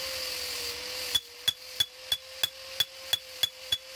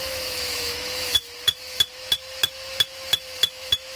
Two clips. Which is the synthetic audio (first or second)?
second